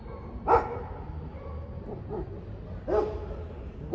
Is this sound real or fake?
real